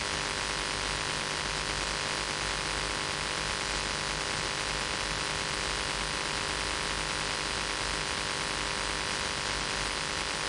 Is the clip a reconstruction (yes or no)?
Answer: no